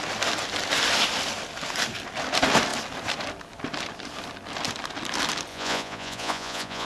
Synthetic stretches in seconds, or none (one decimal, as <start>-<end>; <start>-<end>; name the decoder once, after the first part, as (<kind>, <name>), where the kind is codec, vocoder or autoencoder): 5.5-6.9 (vocoder, Vocos)

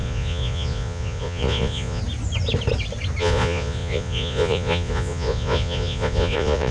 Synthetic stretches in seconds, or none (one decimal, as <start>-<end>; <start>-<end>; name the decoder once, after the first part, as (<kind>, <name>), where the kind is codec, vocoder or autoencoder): 0.0-2.0 (vocoder, Vocos); 3.2-6.7

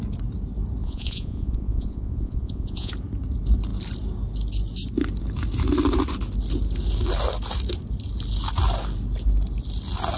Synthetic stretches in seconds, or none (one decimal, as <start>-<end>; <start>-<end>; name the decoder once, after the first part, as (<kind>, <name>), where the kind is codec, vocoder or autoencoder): 0.8-2.9 (vocoder, Vocos)

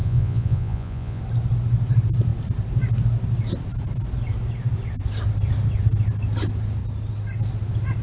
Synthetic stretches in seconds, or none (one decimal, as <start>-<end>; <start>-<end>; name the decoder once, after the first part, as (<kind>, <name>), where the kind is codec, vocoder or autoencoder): 0.0-1.2 (vocoder, Vocos)